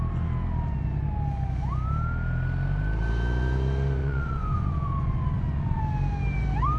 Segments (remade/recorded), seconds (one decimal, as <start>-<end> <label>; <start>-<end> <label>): 0.0-4.0 recorded; 4.0-5.8 remade; 5.8-6.8 recorded